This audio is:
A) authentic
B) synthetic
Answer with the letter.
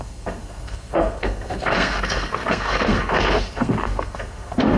B